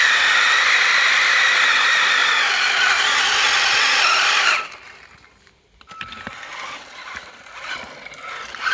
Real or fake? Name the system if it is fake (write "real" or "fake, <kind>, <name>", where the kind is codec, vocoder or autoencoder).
real